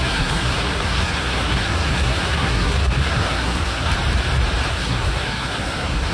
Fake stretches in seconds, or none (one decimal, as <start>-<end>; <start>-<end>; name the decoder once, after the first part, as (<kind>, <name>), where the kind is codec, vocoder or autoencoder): 0.0-3.9 (codec, SNAC); 4.7-6.1